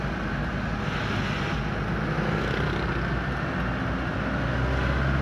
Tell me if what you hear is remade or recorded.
recorded